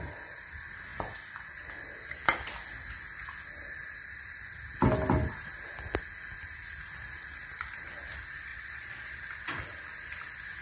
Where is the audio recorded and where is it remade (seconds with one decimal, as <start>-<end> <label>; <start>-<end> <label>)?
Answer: 0.0-8.5 recorded; 8.5-9.2 remade; 9.2-10.6 recorded